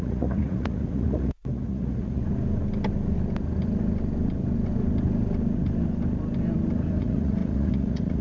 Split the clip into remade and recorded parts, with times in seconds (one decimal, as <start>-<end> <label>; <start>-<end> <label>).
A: 0.0-2.2 remade; 2.2-7.0 recorded; 7.0-8.2 remade